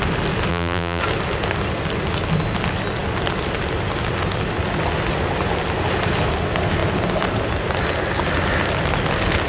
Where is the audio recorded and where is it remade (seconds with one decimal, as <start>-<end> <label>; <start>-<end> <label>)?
0.0-0.5 recorded; 0.5-1.0 remade; 1.0-9.5 recorded